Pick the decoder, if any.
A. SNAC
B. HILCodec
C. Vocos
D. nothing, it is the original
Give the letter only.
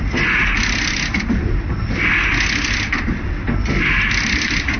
D